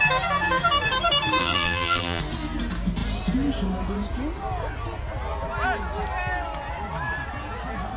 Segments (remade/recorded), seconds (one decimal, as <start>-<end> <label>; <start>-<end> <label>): 0.0-1.4 recorded; 1.4-2.2 remade; 2.2-8.0 recorded